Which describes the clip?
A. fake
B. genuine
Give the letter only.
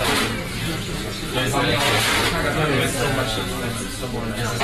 B